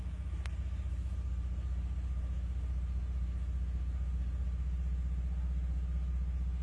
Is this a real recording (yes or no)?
yes